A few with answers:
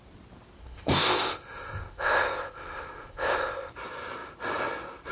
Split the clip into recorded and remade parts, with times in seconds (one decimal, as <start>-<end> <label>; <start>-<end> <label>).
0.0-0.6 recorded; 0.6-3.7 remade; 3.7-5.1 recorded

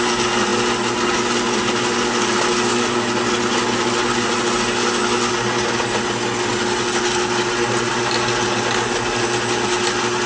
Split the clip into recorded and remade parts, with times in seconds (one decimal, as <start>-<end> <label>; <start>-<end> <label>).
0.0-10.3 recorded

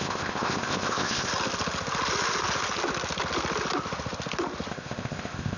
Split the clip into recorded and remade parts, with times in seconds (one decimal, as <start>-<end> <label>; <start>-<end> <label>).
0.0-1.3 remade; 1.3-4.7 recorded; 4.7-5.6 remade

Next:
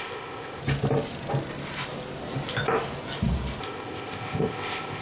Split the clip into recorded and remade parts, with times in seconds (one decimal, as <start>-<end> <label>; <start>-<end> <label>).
0.0-0.6 remade; 0.6-3.6 recorded; 3.6-5.0 remade

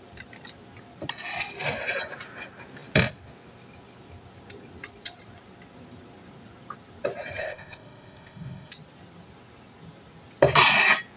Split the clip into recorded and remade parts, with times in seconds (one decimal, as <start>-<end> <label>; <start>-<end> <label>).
0.0-7.4 recorded; 7.4-8.7 remade; 8.7-11.2 recorded